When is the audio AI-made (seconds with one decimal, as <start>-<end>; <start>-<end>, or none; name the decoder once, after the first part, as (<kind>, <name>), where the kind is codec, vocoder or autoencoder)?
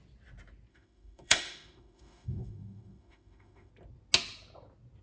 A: 0.7-3.7 (autoencoder, DAC-VAE)